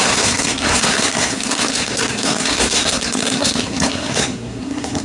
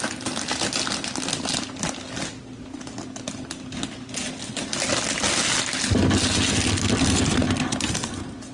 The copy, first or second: first